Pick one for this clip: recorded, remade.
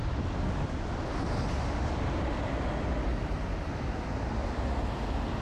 recorded